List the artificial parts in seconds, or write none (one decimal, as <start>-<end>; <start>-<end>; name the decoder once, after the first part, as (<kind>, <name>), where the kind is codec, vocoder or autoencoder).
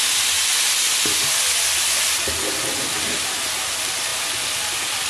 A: none